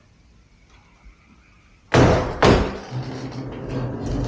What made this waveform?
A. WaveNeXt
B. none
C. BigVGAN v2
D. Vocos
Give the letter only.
B